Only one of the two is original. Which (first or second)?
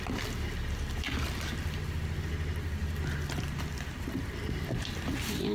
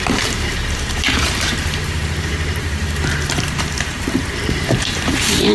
first